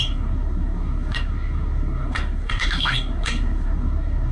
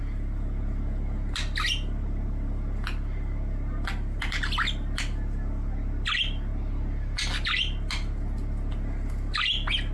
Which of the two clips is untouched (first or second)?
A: second